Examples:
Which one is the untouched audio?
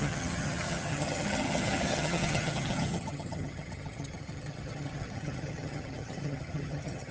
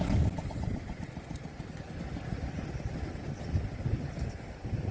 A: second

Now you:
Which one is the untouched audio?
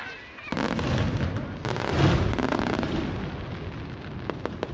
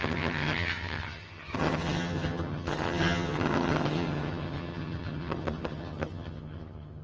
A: first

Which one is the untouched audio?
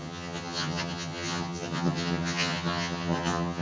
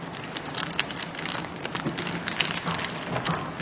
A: second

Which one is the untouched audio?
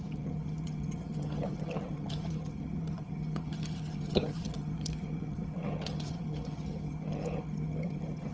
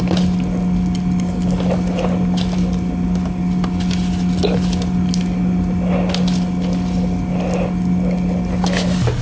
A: second